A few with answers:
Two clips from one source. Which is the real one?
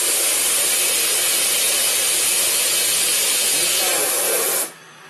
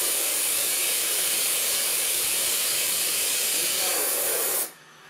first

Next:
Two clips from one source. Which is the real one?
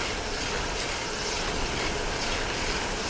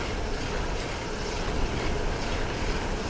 first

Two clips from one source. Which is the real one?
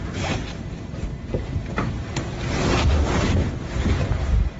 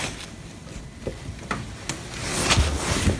second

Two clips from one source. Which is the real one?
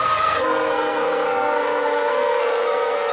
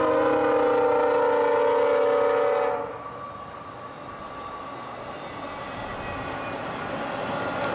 second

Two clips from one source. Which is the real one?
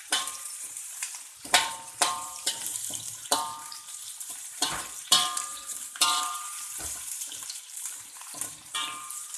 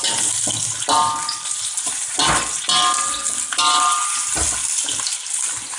second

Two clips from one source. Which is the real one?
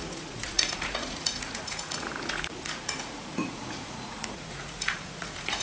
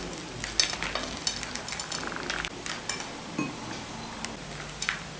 second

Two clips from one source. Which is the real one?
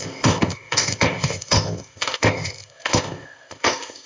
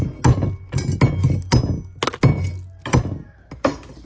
second